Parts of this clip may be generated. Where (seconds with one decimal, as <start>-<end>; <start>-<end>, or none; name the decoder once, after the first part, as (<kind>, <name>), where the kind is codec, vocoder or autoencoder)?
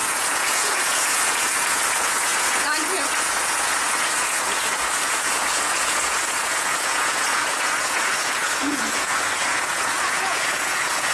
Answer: 0.0-11.1 (vocoder, Vocos)